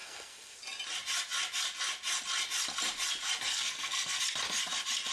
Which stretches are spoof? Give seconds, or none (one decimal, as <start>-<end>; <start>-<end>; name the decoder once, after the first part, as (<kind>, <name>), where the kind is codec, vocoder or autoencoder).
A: 0.0-0.6 (codec, SNAC); 3.5-4.2